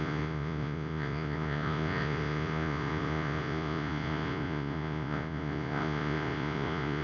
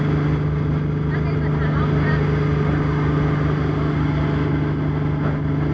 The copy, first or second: first